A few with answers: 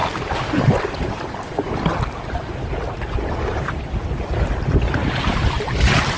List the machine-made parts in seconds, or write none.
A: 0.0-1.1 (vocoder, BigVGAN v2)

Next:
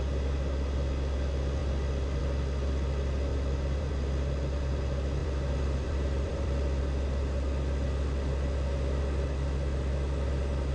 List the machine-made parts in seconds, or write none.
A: 3.3-3.9 (vocoder, BigVGAN v2); 5.2-6.8

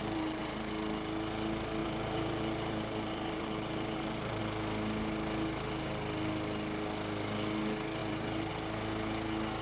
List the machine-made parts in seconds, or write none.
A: 0.0-0.7 (vocoder, BigVGAN v2); 1.8-4.4; 8.0-8.5

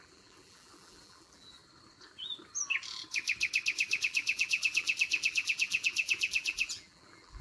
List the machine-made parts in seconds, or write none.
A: 0.0-1.6 (vocoder, BigVGAN v2); 4.0-7.4

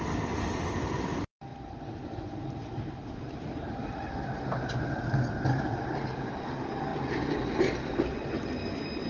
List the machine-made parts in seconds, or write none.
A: 1.5-6.4 (vocoder, BigVGAN v2)

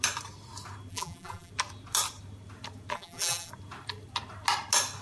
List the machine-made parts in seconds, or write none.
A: 0.9-1.5 (vocoder, BigVGAN v2); 2.9-3.5

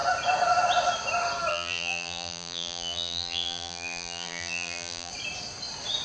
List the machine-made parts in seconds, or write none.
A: 1.5-5.1 (vocoder, BigVGAN v2)

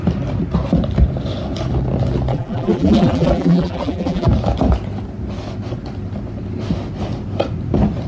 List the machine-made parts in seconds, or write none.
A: 2.3-4.3 (vocoder, BigVGAN v2)